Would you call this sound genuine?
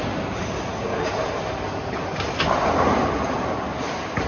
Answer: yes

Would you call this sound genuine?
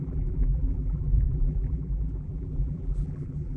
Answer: no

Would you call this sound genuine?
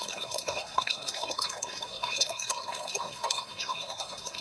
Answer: no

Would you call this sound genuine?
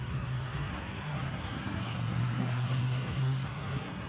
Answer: no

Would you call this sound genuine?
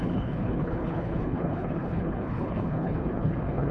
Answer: no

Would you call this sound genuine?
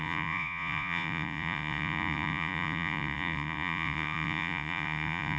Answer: no